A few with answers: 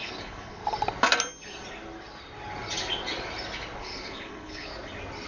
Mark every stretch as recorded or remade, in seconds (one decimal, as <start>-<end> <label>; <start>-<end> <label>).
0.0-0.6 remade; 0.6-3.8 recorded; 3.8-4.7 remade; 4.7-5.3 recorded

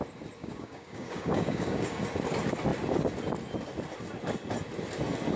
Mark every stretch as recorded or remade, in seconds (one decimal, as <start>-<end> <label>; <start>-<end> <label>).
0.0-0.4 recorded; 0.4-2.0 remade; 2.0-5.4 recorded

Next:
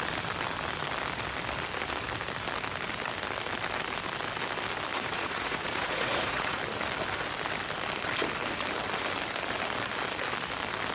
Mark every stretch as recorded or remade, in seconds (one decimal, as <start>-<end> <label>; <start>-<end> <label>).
0.0-4.9 recorded; 4.9-6.6 remade; 6.6-10.9 recorded